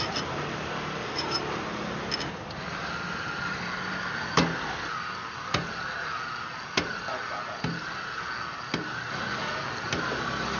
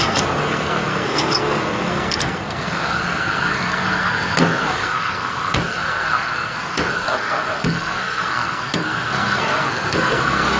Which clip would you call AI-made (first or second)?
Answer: second